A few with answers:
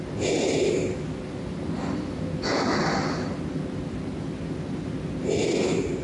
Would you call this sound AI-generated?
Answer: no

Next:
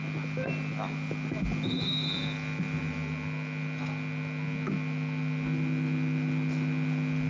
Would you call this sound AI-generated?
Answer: no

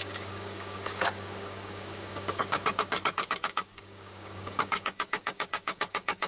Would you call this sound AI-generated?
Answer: yes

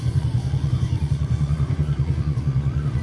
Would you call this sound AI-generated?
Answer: yes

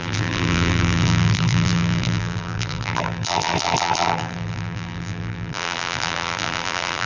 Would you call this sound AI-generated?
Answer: yes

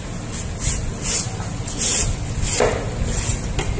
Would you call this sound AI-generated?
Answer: no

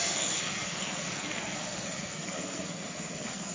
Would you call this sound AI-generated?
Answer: yes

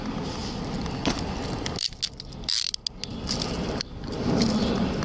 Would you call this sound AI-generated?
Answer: no